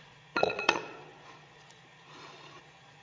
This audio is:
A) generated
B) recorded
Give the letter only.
A